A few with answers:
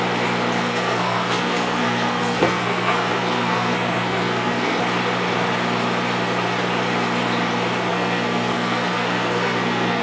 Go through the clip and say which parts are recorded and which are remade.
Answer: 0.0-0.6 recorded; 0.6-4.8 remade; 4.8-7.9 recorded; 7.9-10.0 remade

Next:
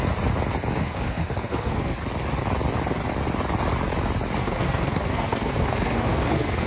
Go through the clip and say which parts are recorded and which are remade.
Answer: 0.0-0.8 recorded; 0.8-1.9 remade; 1.9-4.4 recorded; 4.4-6.7 remade

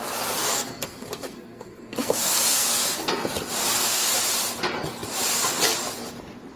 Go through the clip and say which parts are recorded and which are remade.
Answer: 0.0-0.4 recorded; 0.4-3.1 remade; 3.1-3.6 recorded; 3.6-4.1 remade; 4.1-6.6 recorded

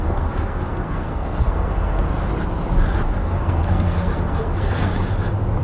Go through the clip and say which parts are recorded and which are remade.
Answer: 0.0-2.0 remade; 2.0-3.2 recorded; 3.2-4.9 remade; 4.9-5.6 recorded

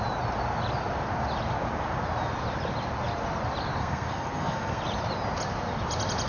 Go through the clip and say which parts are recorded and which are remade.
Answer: 0.0-3.8 recorded; 3.8-4.8 remade; 4.8-6.3 recorded

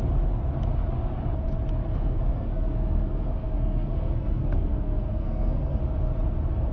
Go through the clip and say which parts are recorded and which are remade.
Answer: 0.0-1.8 recorded; 1.8-5.8 remade; 5.8-6.7 recorded

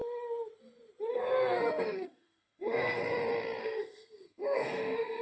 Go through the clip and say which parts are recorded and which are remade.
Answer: 0.0-1.1 recorded; 1.1-3.0 remade; 3.0-3.6 recorded; 3.6-5.2 remade